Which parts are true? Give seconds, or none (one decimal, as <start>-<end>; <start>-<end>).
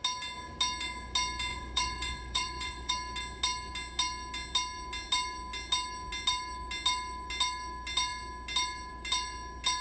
0.0-1.5; 2.9-9.8